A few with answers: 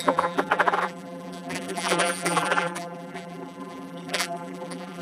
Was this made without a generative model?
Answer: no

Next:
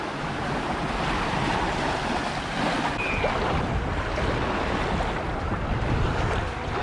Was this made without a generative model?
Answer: yes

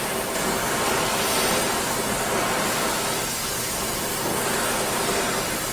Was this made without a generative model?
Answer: yes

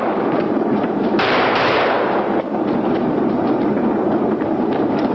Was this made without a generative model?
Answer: no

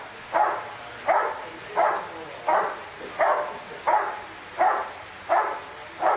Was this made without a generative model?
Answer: yes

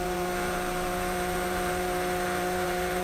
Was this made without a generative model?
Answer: no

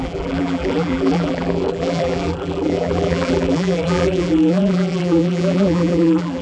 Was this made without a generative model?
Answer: no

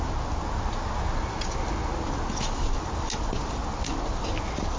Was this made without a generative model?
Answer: yes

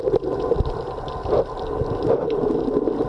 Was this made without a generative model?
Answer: yes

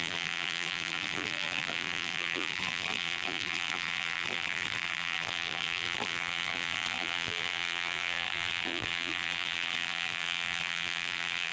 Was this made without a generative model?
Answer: no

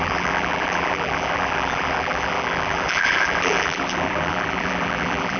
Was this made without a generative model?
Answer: no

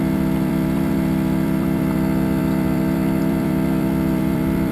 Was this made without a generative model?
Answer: no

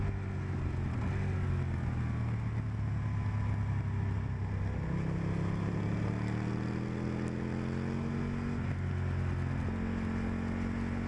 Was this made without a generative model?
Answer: yes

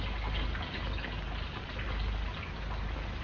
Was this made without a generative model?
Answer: yes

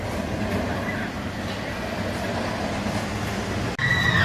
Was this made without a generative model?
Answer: yes